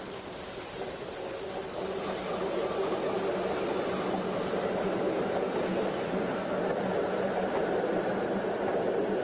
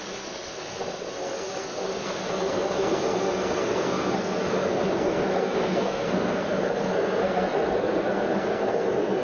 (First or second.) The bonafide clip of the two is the first